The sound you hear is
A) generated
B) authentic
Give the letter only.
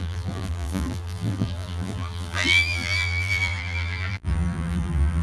A